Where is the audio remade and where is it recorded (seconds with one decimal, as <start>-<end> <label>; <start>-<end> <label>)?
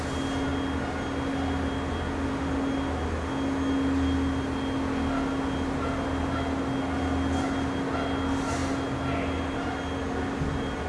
0.0-10.9 recorded